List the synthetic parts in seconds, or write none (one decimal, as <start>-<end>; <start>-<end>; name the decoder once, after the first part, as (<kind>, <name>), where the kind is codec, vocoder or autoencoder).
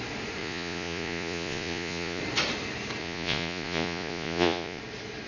0.4-2.2 (vocoder, Vocos); 3.0-4.8